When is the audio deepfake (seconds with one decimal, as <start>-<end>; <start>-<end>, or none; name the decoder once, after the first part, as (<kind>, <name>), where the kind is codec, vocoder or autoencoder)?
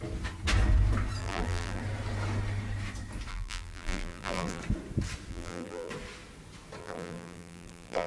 1.2-1.8 (vocoder, BigVGAN v2); 3.3-4.6; 5.3-5.9; 6.8-8.1